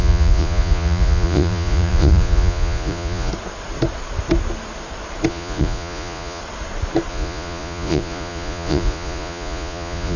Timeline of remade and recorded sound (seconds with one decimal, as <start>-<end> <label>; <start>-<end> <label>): 0.0-3.3 remade; 3.3-5.3 recorded; 5.3-6.4 remade; 6.4-7.1 recorded; 7.1-10.2 remade